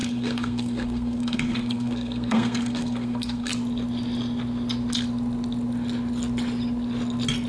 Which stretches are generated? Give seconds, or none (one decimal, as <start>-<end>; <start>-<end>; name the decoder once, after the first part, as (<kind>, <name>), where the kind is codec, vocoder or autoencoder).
0.0-3.5 (codec, SNAC)